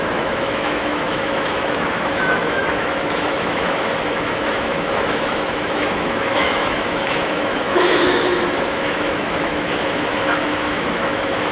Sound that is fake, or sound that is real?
fake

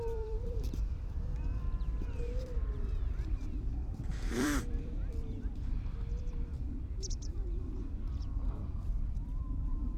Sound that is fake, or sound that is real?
fake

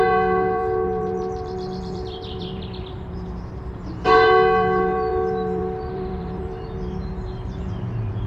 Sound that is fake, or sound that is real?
fake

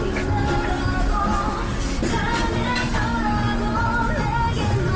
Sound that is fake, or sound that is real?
real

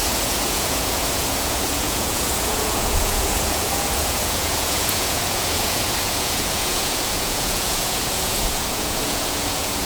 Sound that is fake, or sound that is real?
fake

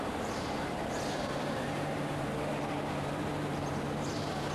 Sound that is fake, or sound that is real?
fake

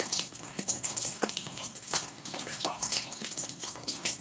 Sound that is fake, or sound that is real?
fake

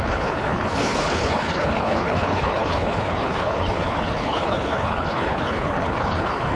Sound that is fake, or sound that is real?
fake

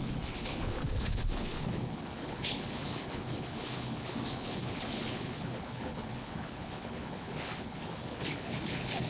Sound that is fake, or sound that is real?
fake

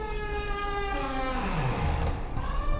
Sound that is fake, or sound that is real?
fake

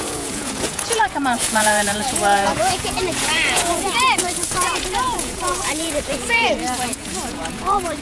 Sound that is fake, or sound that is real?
fake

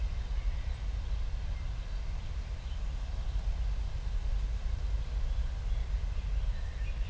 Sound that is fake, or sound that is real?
real